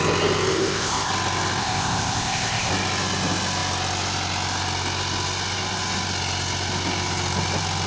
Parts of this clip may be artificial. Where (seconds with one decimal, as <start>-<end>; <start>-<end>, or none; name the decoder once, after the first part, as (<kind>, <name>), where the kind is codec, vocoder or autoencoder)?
0.5-1.1 (codec, ZipCodec); 1.6-2.7